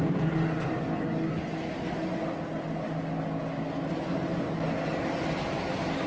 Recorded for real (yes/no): yes